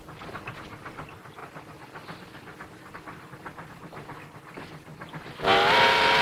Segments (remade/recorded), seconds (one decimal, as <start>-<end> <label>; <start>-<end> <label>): 0.0-6.2 recorded